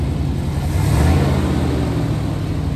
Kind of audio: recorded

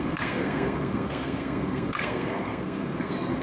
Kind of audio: remade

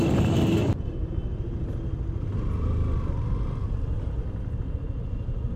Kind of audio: recorded